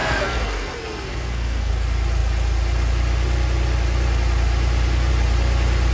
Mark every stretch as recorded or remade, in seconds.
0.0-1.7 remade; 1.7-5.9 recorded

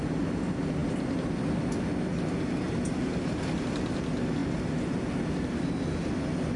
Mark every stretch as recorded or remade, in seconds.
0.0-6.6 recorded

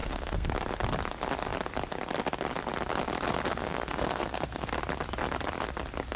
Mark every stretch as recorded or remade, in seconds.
0.0-0.5 remade; 0.5-3.5 recorded; 3.5-4.7 remade; 4.7-6.2 recorded

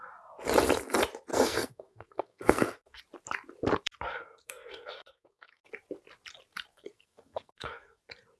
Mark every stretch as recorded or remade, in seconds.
0.0-1.3 recorded; 1.3-3.0 remade; 3.0-4.1 recorded; 4.1-5.7 remade; 5.7-6.7 recorded; 6.7-8.0 remade; 8.0-8.4 recorded

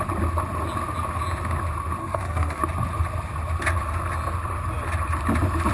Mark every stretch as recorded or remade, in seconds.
0.0-2.0 recorded; 2.0-2.6 remade; 2.6-5.7 recorded

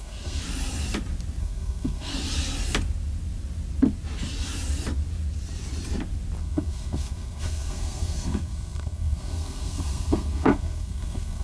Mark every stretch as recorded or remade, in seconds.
0.0-0.4 remade; 0.4-1.4 recorded; 1.4-2.1 remade; 2.1-6.4 recorded; 6.4-11.4 remade